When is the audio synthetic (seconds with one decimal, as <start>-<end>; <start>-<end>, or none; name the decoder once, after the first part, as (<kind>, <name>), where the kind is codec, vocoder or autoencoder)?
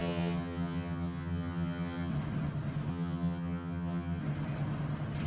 0.0-2.1 (vocoder, HiFi-GAN); 2.9-4.2